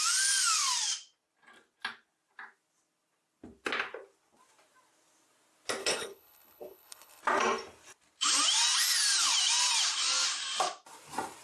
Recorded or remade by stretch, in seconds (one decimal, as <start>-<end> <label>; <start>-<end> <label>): 0.0-5.8 recorded; 5.8-7.2 remade; 7.2-11.4 recorded